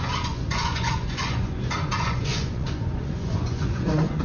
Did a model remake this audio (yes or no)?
yes